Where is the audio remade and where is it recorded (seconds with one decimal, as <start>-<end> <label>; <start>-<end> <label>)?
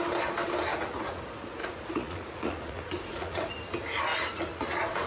0.0-0.7 recorded; 0.7-1.2 remade; 1.2-1.6 recorded; 1.6-3.5 remade; 3.5-4.1 recorded; 4.1-5.1 remade